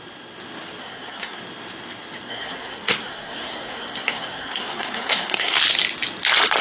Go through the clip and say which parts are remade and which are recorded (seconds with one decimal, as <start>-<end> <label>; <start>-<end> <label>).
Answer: 0.0-0.8 recorded; 0.8-1.4 remade; 1.4-2.3 recorded; 2.3-5.6 remade; 5.6-6.6 recorded